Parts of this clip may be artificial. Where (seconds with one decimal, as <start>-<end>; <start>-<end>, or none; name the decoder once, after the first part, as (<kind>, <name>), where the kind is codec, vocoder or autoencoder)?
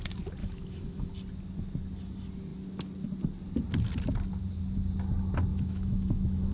0.4-1.1 (autoencoder, DAC-VAE); 5.5-6.5